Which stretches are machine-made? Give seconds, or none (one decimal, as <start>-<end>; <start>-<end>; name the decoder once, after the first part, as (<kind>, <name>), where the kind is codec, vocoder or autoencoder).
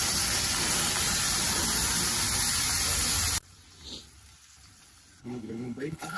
5.2-6.2 (codec, HILCodec)